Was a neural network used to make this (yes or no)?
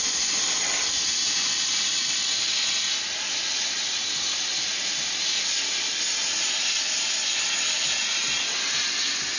no